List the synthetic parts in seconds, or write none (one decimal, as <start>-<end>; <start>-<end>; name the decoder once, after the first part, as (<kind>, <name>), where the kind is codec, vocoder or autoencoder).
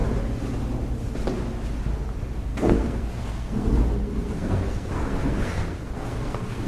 2.5-6.7 (codec, SNAC)